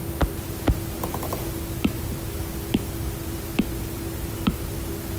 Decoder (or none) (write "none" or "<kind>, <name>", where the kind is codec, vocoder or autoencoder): none